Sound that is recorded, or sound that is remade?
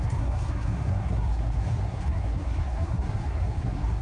remade